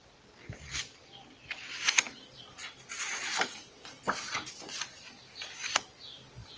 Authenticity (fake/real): real